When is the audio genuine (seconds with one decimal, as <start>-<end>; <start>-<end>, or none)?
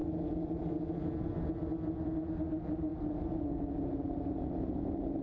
0.0-5.2